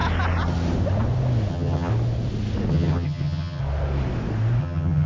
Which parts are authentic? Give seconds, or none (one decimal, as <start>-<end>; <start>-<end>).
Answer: 0.0-1.5; 1.9-2.7; 3.6-4.6